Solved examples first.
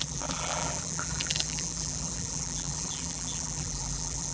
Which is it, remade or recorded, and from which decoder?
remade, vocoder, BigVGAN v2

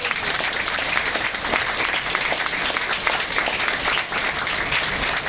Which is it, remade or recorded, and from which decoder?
recorded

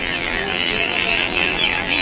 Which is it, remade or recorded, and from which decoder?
remade, vocoder, BigVGAN v2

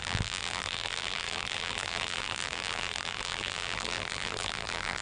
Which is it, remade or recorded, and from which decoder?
remade, vocoder, BigVGAN v2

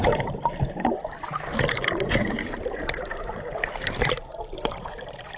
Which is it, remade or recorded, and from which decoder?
remade, vocoder, BigVGAN v2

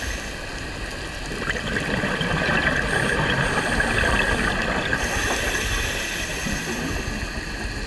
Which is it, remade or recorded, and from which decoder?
recorded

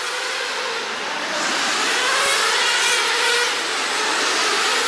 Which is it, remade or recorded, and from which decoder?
recorded